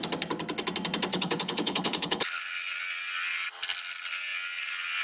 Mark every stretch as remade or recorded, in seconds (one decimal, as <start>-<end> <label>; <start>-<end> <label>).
0.0-1.1 recorded; 1.1-2.4 remade; 2.4-5.0 recorded